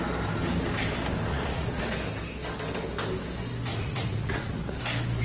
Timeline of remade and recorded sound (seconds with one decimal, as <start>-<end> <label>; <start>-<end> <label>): 0.0-1.3 recorded; 1.3-1.8 remade; 1.8-3.7 recorded; 3.7-4.8 remade; 4.8-5.2 recorded